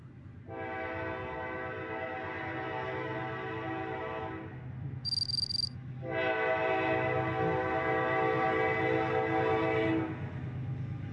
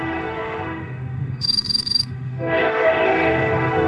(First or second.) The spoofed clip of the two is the second